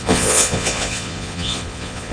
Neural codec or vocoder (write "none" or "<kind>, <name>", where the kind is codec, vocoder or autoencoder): vocoder, Vocos